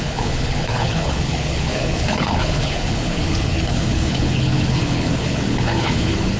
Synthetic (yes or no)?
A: yes